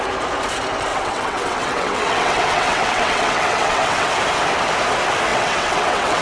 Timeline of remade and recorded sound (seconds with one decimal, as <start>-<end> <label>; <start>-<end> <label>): 0.0-0.9 recorded; 0.9-4.1 remade; 4.1-5.3 recorded; 5.3-6.2 remade